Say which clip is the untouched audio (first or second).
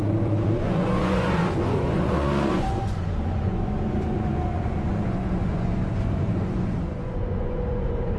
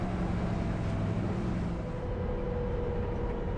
second